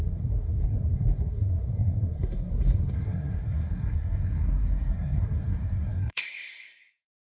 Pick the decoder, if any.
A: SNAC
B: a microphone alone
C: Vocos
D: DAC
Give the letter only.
A